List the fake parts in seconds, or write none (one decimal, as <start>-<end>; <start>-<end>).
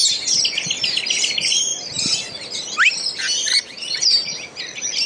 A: none